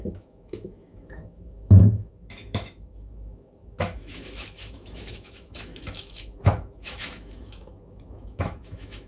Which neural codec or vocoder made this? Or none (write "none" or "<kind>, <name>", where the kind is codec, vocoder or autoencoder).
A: autoencoder, DAC-VAE